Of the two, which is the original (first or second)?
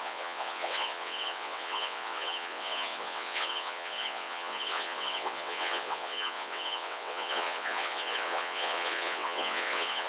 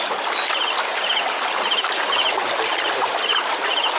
second